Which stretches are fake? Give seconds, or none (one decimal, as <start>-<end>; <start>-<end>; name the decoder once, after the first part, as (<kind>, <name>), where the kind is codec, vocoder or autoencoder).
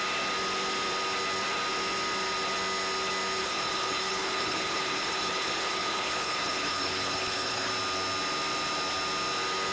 3.4-7.7 (codec, HILCodec)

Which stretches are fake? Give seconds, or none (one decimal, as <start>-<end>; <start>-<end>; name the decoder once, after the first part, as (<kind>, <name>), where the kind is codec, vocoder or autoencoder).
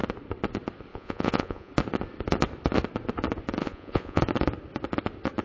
0.9-1.7 (vocoder, Vocos); 3.6-4.2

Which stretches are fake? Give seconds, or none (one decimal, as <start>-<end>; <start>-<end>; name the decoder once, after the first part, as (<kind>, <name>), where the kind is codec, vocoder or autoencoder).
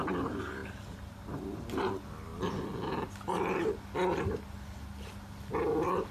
none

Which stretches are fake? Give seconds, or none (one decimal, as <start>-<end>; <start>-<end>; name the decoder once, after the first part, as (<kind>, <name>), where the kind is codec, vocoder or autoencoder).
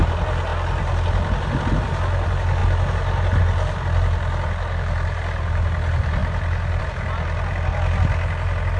none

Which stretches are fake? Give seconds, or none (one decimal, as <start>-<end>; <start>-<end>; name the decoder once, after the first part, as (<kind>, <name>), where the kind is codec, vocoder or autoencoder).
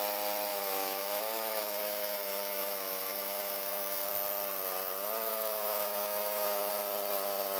0.5-4.1 (autoencoder, DAC-VAE); 5.3-6.7